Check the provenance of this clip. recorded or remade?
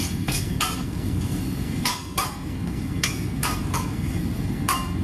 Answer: remade